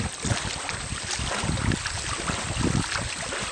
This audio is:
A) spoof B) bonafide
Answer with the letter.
B